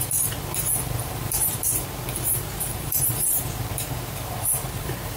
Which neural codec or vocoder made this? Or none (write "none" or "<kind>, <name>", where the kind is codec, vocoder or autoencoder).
vocoder, BigVGAN v2